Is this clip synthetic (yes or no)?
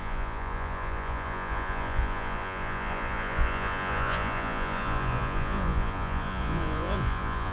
yes